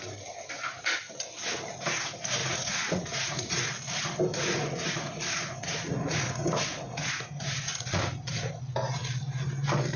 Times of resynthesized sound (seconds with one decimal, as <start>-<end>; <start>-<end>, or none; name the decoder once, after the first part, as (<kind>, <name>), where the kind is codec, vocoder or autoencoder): 2.4-3.6 (vocoder, Vocos); 4.3-8.0